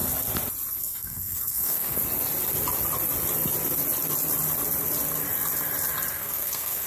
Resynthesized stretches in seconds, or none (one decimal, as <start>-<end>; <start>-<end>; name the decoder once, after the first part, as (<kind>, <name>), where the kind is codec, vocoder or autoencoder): 0.7-2.0 (codec, SNAC); 6.1-6.9